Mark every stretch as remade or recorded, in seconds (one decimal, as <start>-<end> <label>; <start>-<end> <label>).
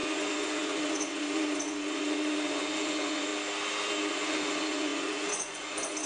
0.0-3.3 remade; 3.3-4.1 recorded; 4.1-6.1 remade